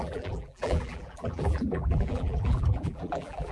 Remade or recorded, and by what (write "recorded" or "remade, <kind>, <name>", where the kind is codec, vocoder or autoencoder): remade, vocoder, BigVGAN v2